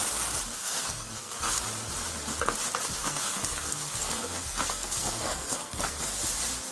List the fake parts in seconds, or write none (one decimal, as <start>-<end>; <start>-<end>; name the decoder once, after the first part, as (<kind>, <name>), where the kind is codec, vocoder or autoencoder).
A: 0.6-1.6 (codec, SNAC); 3.0-6.0